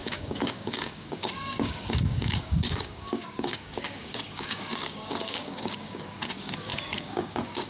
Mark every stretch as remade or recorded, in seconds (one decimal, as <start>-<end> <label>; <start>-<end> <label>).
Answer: 0.0-7.7 remade